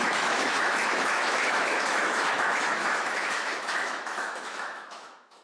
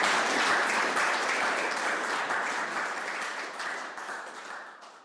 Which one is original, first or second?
second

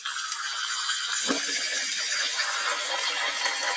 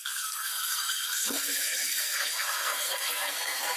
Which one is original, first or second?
first